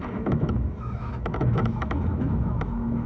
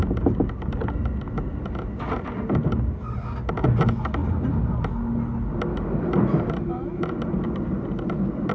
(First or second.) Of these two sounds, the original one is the second